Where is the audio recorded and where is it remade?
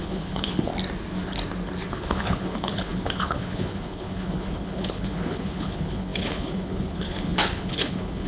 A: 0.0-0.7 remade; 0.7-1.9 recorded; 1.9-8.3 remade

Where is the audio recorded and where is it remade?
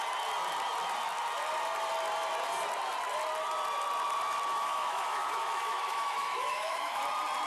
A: 0.0-4.6 recorded; 4.6-7.0 remade; 7.0-7.5 recorded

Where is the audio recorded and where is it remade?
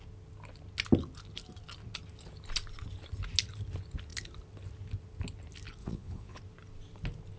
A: 0.0-5.8 recorded; 5.8-6.4 remade; 6.4-7.4 recorded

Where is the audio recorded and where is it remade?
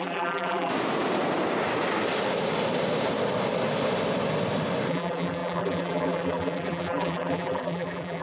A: 0.0-0.7 remade; 0.7-4.9 recorded; 4.9-8.2 remade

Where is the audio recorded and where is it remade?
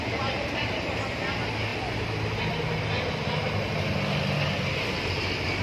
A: 0.0-5.6 recorded